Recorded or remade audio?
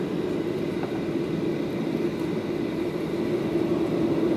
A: recorded